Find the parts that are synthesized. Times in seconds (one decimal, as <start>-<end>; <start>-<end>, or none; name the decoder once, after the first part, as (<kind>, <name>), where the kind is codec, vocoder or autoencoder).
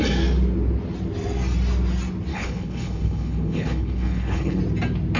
2.3-4.6 (codec, HILCodec)